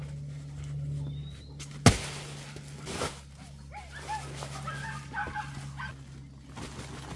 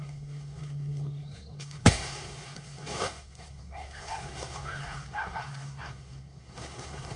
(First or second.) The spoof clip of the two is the second